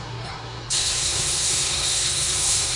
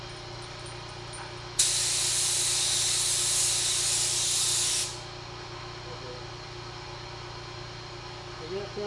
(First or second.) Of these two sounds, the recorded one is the second